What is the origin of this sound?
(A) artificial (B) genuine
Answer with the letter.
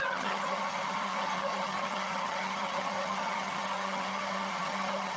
A